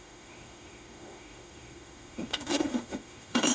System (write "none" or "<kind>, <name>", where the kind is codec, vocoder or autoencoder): autoencoder, DAC-VAE